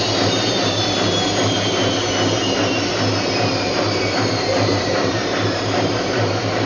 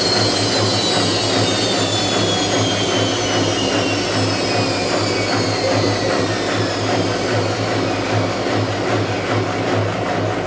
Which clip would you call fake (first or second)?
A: first